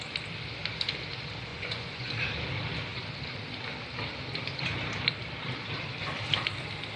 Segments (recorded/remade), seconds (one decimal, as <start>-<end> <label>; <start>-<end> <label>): 0.0-1.5 recorded; 1.5-2.1 remade; 2.1-7.0 recorded